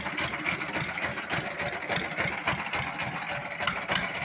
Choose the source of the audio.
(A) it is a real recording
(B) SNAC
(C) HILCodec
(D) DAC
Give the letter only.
A